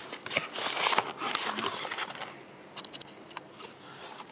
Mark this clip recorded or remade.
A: recorded